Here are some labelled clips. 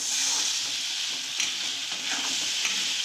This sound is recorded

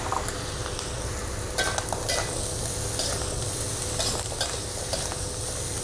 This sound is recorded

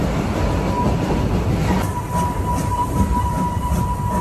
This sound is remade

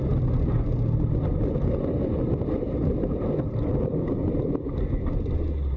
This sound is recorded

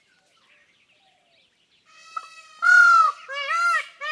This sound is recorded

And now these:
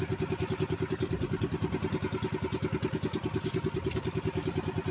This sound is remade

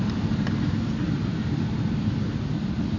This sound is remade